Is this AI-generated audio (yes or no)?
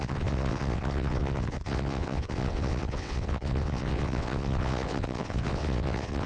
yes